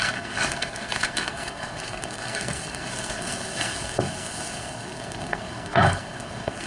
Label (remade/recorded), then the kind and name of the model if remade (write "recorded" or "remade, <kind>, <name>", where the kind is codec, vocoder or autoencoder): remade, codec, SNAC